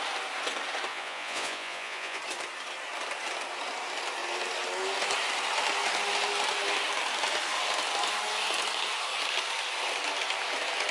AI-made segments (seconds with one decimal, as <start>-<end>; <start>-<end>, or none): 0.9-2.2